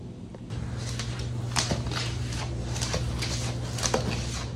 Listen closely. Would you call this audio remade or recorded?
recorded